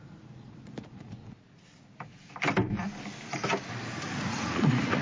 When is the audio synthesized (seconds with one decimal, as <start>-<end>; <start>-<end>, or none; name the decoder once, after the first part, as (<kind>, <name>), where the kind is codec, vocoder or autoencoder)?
0.0-1.2 (vocoder, Vocos); 4.2-5.0